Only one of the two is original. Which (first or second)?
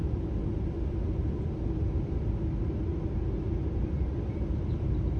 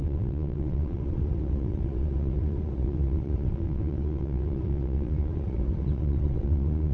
first